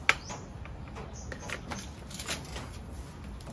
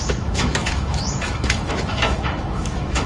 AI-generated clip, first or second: second